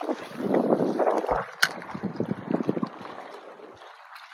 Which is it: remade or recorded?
recorded